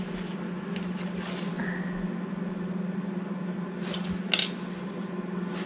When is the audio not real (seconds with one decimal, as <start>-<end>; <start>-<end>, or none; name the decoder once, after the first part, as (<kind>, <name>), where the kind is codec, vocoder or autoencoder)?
none